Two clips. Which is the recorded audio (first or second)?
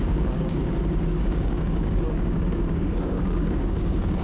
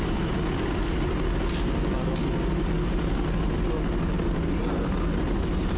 second